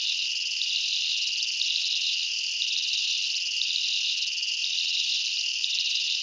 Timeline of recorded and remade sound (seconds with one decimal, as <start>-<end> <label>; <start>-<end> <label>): 0.0-2.3 recorded; 2.3-3.2 remade; 3.2-4.6 recorded; 4.6-6.2 remade